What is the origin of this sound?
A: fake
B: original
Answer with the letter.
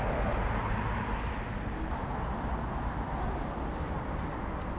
B